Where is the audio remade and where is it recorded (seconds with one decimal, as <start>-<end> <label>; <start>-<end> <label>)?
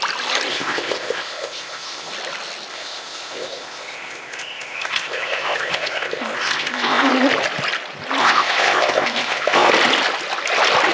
0.0-0.5 recorded; 0.5-2.1 remade; 2.1-2.7 recorded; 2.7-7.1 remade; 7.1-8.2 recorded; 8.2-9.7 remade; 9.7-10.9 recorded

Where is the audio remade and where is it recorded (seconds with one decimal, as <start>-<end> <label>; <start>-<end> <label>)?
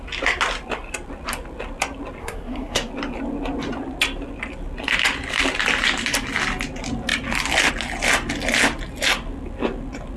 0.0-2.2 recorded; 2.2-2.9 remade; 2.9-10.2 recorded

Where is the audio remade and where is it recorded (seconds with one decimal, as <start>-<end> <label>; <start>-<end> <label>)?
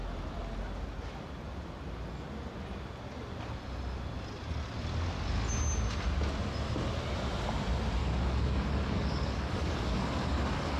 0.0-8.0 recorded; 8.0-10.8 remade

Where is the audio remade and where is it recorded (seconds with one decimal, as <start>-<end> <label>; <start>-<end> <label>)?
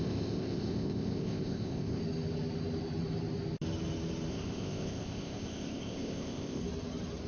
0.0-2.0 remade; 2.0-4.3 recorded; 4.3-6.6 remade; 6.6-7.3 recorded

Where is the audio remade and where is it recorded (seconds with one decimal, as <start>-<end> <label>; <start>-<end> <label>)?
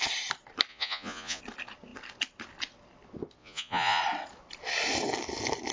0.0-0.7 recorded; 0.7-1.4 remade; 1.4-3.4 recorded; 3.4-4.0 remade; 4.0-5.7 recorded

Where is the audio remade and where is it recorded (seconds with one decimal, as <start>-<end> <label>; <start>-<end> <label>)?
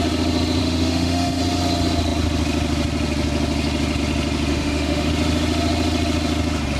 0.0-0.6 recorded; 0.6-1.4 remade; 1.4-4.5 recorded; 4.5-5.1 remade; 5.1-6.8 recorded